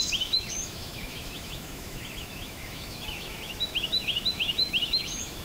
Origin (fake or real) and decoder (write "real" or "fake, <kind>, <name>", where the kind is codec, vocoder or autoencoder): fake, autoencoder, DAC-VAE